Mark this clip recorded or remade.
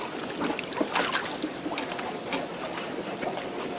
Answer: remade